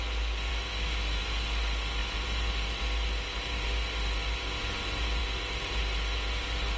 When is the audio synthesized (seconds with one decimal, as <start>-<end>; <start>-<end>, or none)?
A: 0.5-1.2